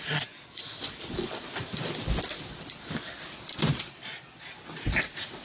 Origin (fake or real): real